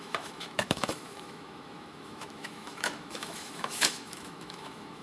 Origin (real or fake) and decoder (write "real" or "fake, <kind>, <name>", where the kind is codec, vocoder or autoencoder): fake, autoencoder, DAC-VAE